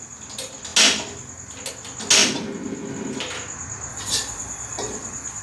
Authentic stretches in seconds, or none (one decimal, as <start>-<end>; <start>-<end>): 0.0-3.9